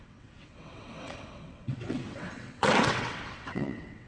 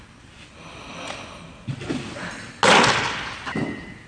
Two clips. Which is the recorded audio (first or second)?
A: second